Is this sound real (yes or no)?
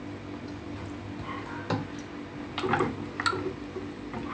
yes